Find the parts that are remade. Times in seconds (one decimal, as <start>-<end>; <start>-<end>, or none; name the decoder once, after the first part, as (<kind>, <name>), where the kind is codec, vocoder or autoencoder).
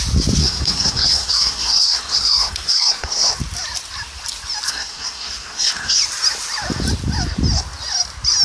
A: 0.4-3.3 (codec, SNAC); 4.7-6.0